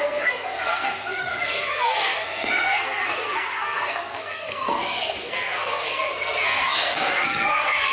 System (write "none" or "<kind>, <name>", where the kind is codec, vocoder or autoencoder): codec, SNAC